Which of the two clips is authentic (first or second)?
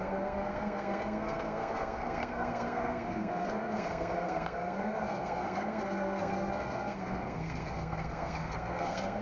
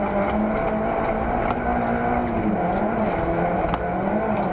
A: second